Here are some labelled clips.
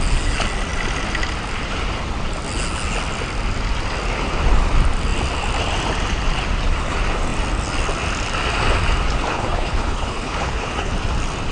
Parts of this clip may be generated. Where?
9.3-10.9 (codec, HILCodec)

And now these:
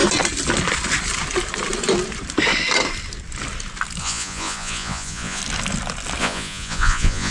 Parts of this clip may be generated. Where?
4.0-5.4 (vocoder, Vocos); 6.2-7.3

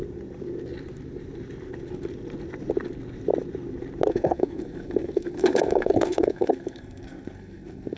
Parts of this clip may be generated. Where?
4.1-8.0 (codec, SNAC)